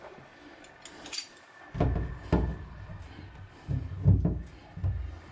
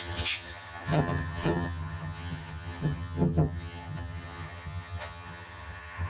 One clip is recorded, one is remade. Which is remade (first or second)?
second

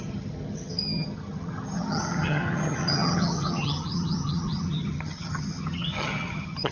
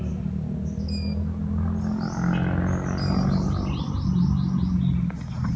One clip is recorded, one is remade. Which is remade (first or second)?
first